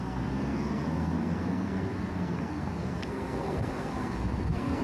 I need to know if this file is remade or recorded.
remade